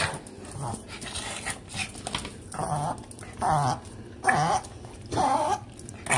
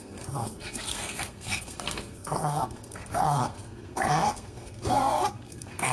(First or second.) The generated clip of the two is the second